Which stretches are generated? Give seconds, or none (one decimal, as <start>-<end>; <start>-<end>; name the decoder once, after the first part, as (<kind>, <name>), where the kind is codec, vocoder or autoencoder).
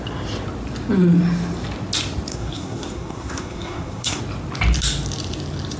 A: 2.3-4.2 (codec, SNAC)